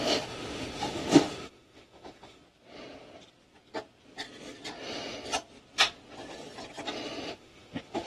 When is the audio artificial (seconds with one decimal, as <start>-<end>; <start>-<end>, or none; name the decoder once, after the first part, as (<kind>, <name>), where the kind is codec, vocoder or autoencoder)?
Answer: 0.0-2.4 (autoencoder, DAC-VAE); 7.3-8.1